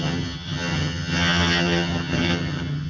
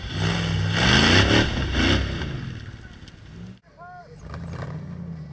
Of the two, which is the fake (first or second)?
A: first